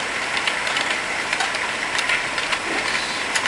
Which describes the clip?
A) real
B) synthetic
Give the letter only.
B